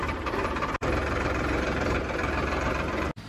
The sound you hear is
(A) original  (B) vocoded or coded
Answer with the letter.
B